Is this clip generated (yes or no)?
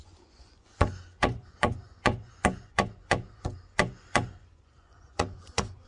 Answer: yes